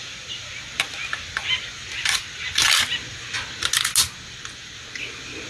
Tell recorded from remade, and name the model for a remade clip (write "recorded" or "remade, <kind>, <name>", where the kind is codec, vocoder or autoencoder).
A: recorded